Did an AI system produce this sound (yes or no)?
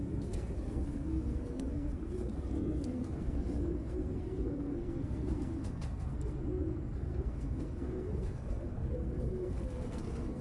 yes